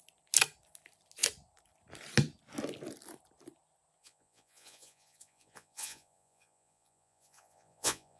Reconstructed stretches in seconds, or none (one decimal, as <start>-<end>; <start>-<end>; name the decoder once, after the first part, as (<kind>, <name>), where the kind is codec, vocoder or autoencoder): 4.0-8.2 (vocoder, Vocos)